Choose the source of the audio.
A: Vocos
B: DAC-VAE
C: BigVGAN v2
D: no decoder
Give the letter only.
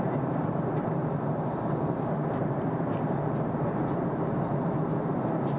C